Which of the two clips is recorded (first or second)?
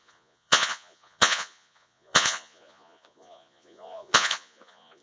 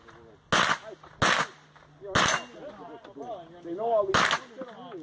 second